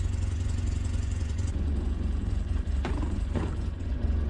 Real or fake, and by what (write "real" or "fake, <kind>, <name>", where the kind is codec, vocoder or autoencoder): fake, vocoder, Vocos